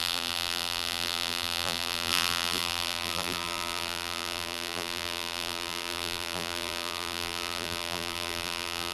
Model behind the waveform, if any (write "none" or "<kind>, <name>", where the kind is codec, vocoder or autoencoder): vocoder, BigVGAN v2